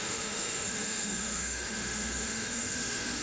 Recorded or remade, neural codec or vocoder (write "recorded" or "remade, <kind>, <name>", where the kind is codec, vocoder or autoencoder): remade, autoencoder, DAC-VAE